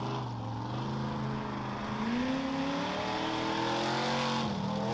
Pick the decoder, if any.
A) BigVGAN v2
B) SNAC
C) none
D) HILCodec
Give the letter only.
C